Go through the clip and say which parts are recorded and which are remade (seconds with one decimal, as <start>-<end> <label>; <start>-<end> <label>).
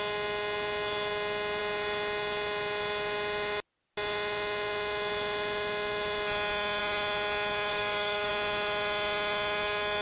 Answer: 0.0-7.7 recorded; 7.7-8.3 remade; 8.3-10.0 recorded